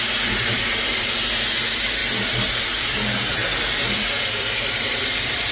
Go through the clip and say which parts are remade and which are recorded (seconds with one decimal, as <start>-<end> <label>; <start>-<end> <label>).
0.0-2.0 remade; 2.0-2.5 recorded; 2.5-3.4 remade; 3.4-4.2 recorded; 4.2-5.5 remade